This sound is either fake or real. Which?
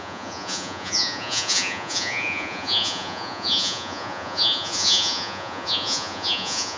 fake